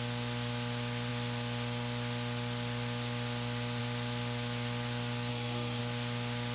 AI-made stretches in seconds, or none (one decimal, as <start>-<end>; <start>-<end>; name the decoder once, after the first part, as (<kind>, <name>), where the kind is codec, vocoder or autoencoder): 5.3-5.8 (codec, SNAC)